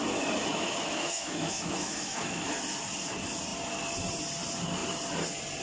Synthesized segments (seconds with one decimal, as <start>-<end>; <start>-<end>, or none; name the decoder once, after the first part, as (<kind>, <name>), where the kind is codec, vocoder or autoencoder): 0.5-2.5 (autoencoder, DAC-VAE)